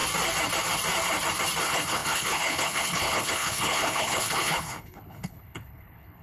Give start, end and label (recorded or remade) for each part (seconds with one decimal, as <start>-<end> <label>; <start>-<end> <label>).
0.0-1.6 recorded; 1.6-6.2 remade